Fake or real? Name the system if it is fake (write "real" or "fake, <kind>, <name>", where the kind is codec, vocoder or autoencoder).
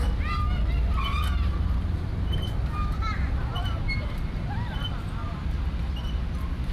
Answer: real